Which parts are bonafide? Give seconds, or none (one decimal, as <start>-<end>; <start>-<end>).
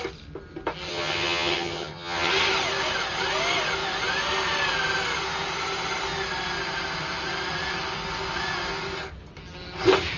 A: 0.0-0.9; 2.3-10.2